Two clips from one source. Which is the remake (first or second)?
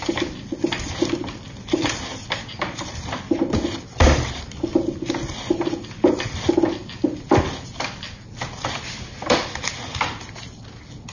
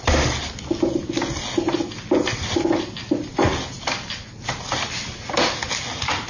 first